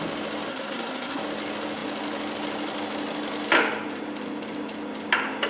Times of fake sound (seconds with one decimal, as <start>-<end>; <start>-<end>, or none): 0.5-1.2